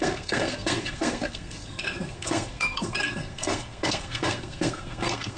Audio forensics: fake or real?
fake